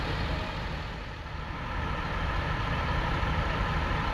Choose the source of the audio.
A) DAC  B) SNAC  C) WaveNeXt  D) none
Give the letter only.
D